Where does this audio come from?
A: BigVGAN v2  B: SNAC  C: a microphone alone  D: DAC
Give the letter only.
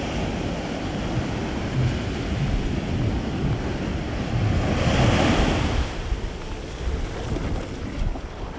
C